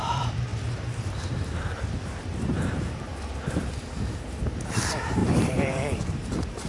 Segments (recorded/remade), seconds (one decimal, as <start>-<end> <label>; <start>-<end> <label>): 0.0-3.1 remade; 3.1-4.1 recorded; 4.1-6.7 remade